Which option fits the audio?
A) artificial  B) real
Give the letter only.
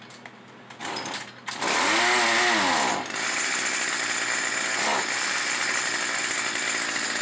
B